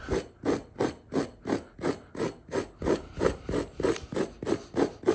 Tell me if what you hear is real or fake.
real